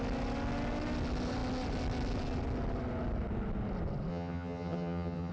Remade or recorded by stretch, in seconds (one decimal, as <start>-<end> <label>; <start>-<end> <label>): 0.0-4.1 recorded; 4.1-5.3 remade